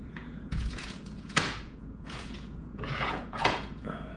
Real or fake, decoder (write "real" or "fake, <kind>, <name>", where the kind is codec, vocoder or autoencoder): fake, vocoder, Vocos